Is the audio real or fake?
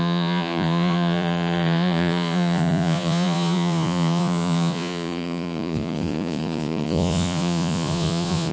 fake